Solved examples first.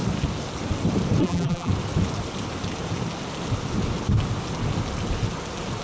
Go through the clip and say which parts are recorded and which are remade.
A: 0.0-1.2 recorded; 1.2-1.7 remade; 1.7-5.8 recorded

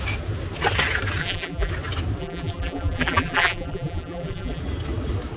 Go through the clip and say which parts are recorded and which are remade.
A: 0.0-1.2 recorded; 1.2-1.7 remade; 1.7-2.2 recorded; 2.2-4.6 remade; 4.6-5.4 recorded

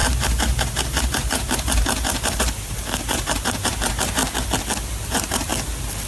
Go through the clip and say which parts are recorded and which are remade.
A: 0.0-4.2 remade; 4.2-5.1 recorded; 5.1-5.5 remade; 5.5-6.1 recorded

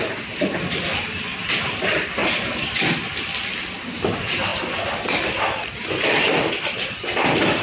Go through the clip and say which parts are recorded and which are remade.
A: 0.0-2.2 remade; 2.2-3.6 recorded; 3.6-7.6 remade

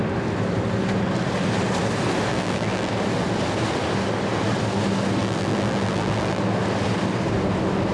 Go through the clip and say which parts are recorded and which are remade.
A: 0.0-2.3 recorded; 2.3-2.9 remade; 2.9-5.2 recorded; 5.2-6.4 remade; 6.4-7.9 recorded

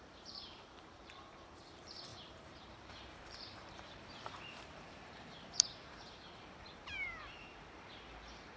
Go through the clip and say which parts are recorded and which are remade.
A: 0.0-8.6 remade

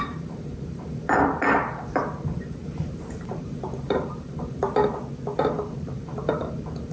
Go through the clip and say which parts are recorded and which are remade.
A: 0.0-4.6 remade; 4.6-5.6 recorded; 5.6-6.9 remade

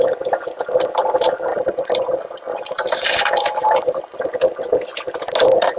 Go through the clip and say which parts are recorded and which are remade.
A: 0.0-1.5 recorded; 1.5-4.3 remade; 4.3-5.8 recorded